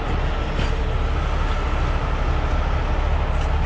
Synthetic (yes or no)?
no